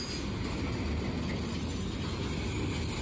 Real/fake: real